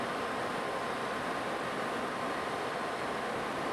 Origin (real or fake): real